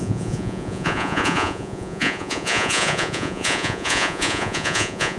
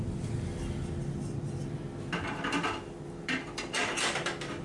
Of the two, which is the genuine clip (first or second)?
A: second